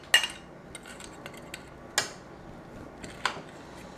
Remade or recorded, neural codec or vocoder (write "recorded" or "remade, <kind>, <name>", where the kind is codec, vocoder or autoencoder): recorded